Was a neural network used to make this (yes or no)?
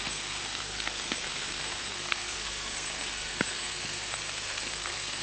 yes